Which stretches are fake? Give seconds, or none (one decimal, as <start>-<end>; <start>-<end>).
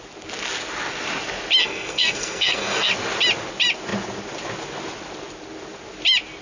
1.6-2.9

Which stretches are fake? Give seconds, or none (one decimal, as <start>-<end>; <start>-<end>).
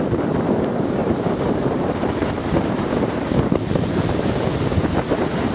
1.0-4.3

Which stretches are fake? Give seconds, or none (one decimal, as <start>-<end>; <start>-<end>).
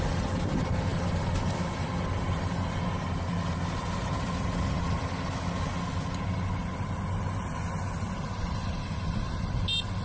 none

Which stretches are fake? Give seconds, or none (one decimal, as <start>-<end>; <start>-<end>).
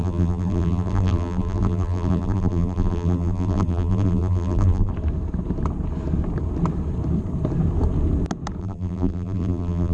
0.0-4.9; 8.6-9.9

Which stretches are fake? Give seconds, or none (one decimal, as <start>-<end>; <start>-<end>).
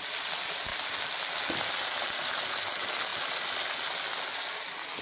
none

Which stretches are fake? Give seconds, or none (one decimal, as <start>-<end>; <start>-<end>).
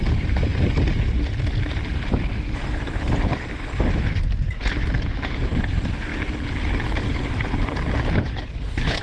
0.0-0.5; 2.5-3.3; 4.2-6.1; 6.6-9.0